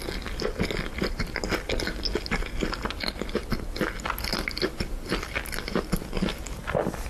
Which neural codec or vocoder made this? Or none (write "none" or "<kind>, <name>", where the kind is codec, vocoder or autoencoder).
none